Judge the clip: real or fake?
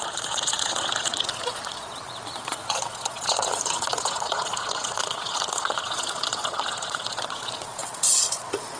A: fake